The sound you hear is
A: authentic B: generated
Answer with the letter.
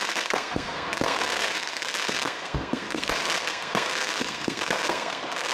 B